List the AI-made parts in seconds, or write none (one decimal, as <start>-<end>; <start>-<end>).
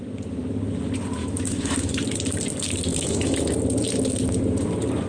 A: 1.2-1.9; 2.9-3.5